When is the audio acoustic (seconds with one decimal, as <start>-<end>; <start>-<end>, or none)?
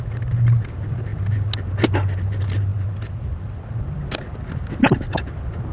0.0-5.7